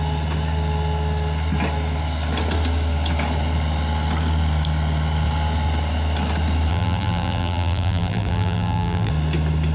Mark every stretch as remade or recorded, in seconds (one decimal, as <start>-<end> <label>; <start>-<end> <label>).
0.0-6.7 recorded; 6.7-9.1 remade; 9.1-9.7 recorded